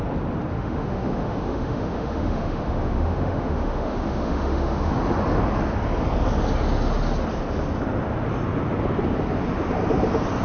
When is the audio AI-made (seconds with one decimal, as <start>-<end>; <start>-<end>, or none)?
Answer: 0.5-4.9